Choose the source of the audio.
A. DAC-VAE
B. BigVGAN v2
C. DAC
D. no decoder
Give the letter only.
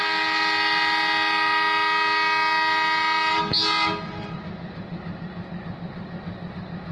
D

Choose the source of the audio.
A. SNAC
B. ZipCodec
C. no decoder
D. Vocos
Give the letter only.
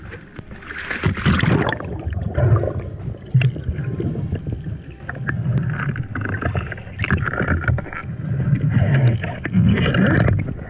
C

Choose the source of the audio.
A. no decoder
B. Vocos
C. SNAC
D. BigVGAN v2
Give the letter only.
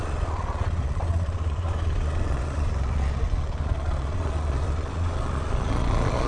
B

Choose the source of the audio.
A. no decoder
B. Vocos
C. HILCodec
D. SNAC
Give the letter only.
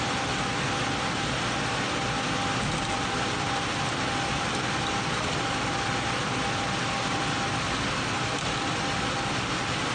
A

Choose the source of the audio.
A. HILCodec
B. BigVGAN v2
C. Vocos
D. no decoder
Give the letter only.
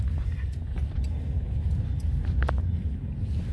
D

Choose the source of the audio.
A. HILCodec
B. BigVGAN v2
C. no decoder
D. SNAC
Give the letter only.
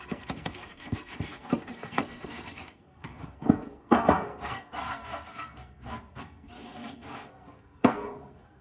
D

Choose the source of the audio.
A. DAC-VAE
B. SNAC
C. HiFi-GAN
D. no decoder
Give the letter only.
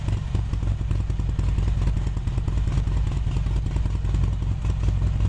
D